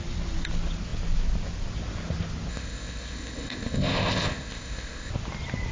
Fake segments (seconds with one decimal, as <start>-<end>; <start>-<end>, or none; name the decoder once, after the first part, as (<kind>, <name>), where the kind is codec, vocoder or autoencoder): 2.5-5.1 (codec, ZipCodec)